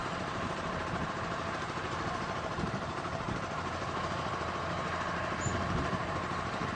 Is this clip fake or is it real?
fake